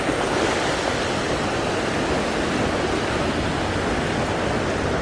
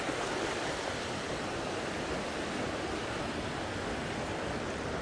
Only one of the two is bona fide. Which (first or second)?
first